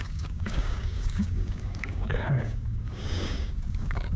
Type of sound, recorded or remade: remade